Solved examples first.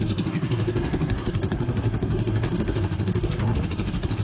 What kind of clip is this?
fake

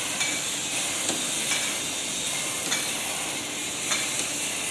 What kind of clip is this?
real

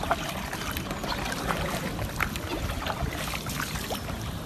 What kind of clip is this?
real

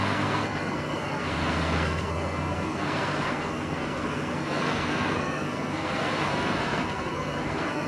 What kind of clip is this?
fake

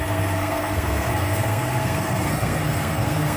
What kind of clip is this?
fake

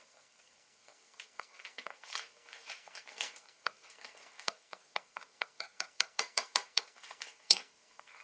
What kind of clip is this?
fake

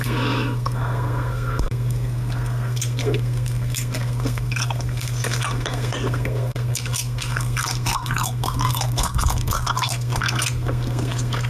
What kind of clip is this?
fake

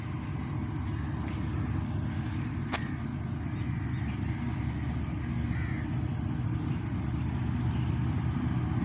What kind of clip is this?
real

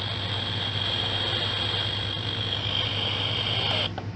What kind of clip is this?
real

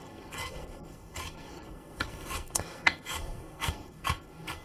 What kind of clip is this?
fake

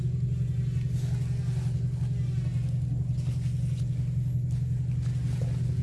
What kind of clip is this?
real